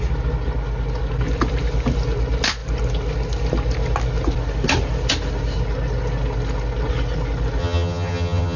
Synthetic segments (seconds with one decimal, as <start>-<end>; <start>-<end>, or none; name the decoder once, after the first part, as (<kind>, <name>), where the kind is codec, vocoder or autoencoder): 7.6-8.6 (vocoder, HiFi-GAN)